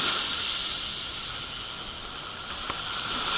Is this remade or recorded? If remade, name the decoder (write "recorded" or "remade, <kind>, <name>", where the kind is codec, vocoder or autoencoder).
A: recorded